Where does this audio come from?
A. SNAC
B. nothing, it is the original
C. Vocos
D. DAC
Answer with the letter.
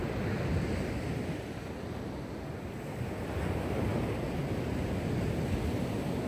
B